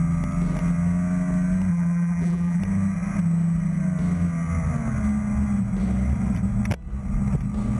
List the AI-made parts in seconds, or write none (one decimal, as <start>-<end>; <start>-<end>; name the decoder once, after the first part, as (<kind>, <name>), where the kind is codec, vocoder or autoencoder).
1.7-2.6 (vocoder, BigVGAN v2)